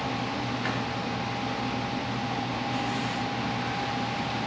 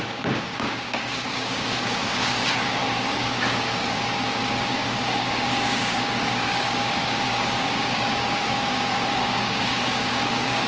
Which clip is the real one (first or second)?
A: first